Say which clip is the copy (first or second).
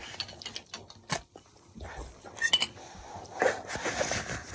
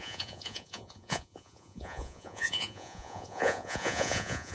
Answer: second